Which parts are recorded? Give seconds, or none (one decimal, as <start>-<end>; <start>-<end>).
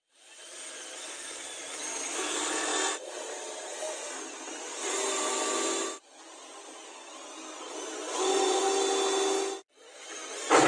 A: 0.0-8.0; 8.6-10.7